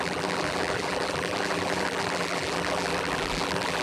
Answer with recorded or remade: remade